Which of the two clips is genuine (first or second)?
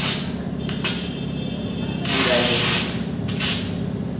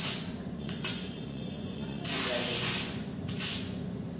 first